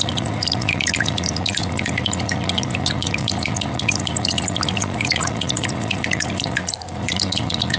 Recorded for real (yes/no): no